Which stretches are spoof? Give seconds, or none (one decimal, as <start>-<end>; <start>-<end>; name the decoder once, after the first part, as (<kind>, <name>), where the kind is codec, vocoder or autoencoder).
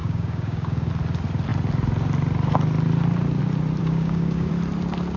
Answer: 0.0-0.9 (codec, DAC); 3.8-4.5